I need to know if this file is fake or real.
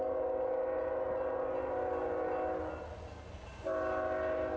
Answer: real